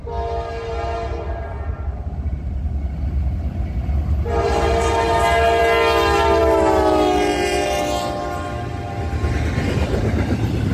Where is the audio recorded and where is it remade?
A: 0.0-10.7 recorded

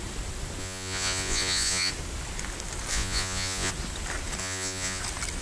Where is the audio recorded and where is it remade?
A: 0.0-0.6 recorded; 0.6-1.9 remade; 1.9-2.9 recorded; 2.9-3.7 remade; 3.7-4.4 recorded; 4.4-5.0 remade; 5.0-5.4 recorded